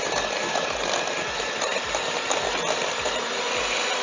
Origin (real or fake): fake